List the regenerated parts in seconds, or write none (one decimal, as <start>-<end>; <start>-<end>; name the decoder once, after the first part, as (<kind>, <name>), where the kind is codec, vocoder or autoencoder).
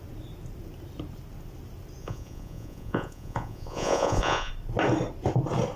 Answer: 2.0-4.5 (vocoder, Vocos)